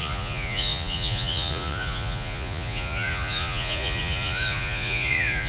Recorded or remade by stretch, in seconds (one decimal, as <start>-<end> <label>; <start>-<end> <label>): 0.0-5.5 remade